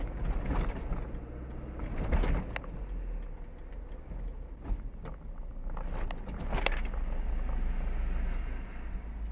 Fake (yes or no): no